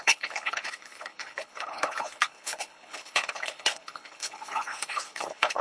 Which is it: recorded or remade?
remade